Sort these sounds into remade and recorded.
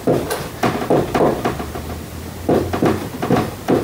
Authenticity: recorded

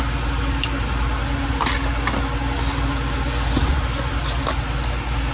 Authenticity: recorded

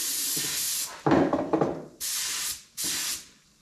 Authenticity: recorded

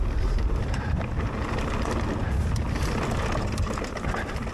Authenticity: recorded